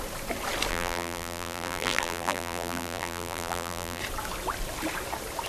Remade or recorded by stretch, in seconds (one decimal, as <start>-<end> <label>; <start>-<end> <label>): 0.0-0.7 recorded; 0.7-4.0 remade; 4.0-5.5 recorded